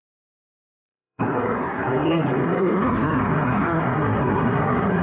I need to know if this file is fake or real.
fake